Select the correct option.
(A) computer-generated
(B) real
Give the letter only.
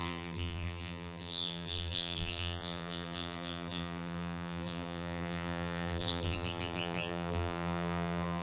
A